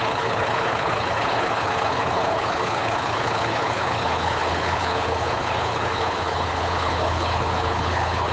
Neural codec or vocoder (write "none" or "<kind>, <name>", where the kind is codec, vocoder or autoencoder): codec, HILCodec